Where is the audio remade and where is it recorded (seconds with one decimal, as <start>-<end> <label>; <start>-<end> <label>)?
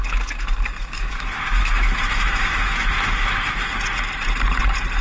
0.0-0.8 recorded; 0.8-3.8 remade; 3.8-5.0 recorded